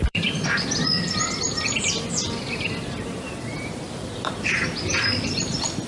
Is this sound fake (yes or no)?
yes